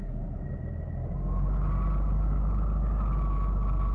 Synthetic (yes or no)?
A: no